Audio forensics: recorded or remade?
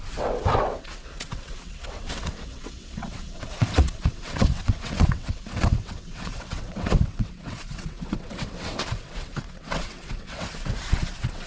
remade